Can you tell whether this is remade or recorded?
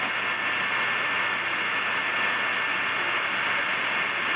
recorded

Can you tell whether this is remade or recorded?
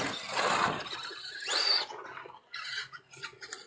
recorded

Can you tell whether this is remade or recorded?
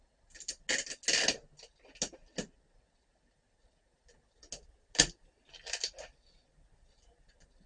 recorded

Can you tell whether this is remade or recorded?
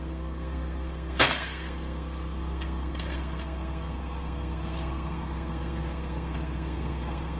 remade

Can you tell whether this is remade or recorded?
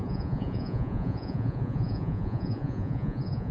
remade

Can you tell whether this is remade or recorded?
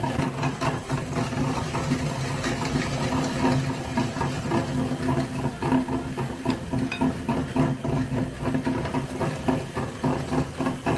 recorded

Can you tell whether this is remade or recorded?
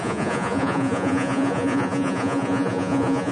remade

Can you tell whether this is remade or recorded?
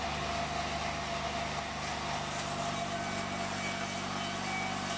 recorded